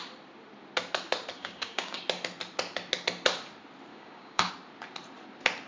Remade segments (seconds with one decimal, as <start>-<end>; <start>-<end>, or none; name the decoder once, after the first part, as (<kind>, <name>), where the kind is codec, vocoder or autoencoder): 1.4-2.0 (codec, DAC); 3.9-4.5